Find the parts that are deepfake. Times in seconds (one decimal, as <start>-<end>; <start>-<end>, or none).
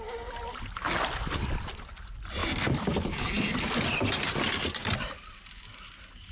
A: 2.4-5.7